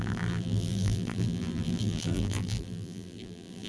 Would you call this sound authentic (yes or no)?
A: no